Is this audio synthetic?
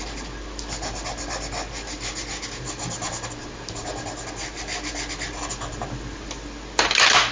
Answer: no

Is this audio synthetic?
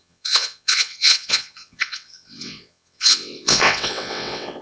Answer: yes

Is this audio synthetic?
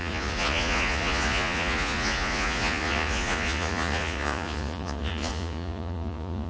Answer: yes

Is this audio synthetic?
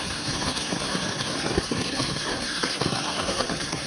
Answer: yes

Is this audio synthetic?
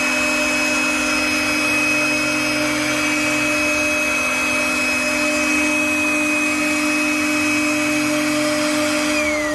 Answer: no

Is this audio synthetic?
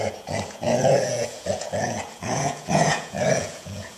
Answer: yes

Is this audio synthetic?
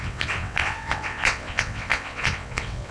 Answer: yes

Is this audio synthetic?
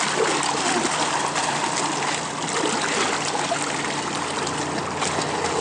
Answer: no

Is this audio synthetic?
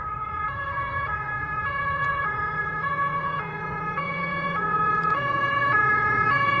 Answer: yes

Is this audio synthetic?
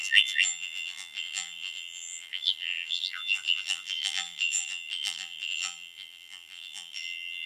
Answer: yes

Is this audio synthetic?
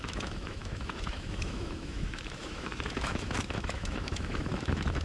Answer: yes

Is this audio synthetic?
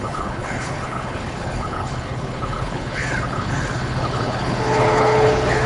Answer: yes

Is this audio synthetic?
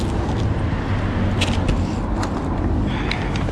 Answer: no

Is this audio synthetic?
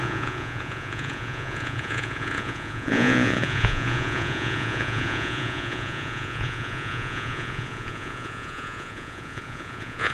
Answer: yes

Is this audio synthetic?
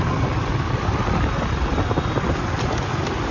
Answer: no